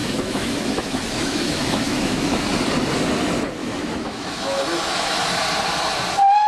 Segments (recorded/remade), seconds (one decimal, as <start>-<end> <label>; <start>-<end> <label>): 0.0-2.5 remade; 2.5-3.6 recorded; 3.6-5.2 remade; 5.2-6.5 recorded